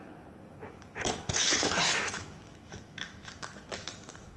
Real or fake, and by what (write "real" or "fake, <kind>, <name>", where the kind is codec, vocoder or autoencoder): fake, autoencoder, DAC-VAE